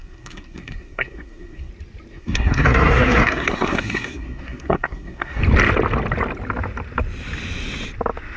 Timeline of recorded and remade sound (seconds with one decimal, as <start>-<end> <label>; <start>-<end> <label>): 0.0-1.7 remade; 1.7-2.1 recorded; 2.1-5.4 remade; 5.4-8.4 recorded